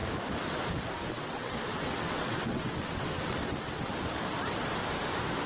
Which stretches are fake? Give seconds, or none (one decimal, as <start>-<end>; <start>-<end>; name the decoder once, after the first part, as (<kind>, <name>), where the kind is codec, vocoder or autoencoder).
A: 1.1-3.9 (vocoder, WaveNeXt)